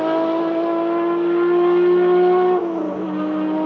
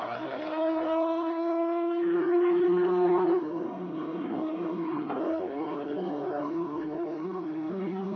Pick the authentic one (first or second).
first